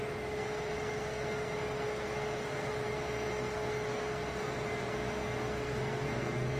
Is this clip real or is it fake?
fake